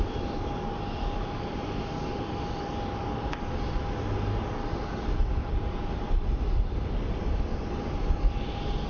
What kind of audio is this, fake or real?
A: fake